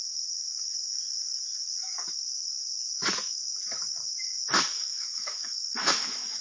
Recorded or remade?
remade